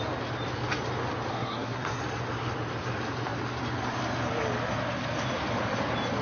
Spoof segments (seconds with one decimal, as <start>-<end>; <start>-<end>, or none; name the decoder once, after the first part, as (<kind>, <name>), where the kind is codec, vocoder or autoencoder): 1.3-2.0 (codec, SNAC)